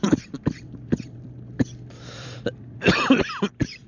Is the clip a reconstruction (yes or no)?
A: yes